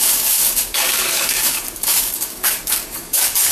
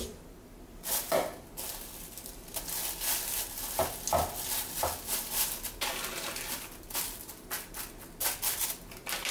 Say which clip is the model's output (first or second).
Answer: first